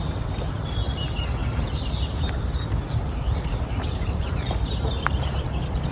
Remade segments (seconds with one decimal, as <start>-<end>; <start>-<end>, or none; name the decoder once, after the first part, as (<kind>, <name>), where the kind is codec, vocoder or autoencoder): 1.4-4.9 (vocoder, BigVGAN v2)